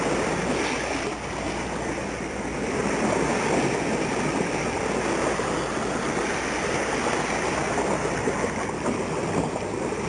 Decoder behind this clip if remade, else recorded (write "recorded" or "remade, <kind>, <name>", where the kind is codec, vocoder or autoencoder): recorded